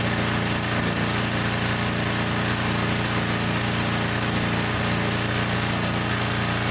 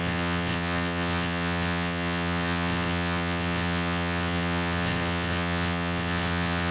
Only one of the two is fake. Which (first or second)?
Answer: second